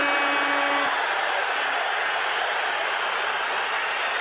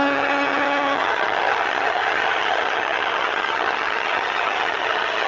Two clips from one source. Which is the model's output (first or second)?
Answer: second